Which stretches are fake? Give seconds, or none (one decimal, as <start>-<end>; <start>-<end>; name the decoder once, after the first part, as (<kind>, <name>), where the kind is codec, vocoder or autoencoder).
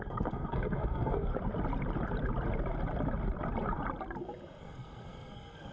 0.0-1.3 (codec, SNAC); 4.6-5.7